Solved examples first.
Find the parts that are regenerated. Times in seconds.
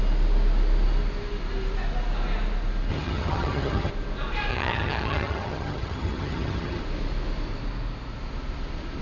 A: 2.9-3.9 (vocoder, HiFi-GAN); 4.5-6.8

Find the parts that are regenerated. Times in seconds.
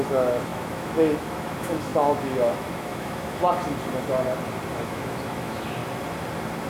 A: 0.0-3.4 (autoencoder, DAC-VAE); 4.7-5.8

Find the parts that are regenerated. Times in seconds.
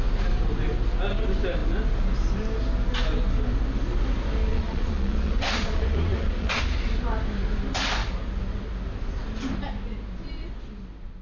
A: 4.5-6.6 (vocoder, Vocos)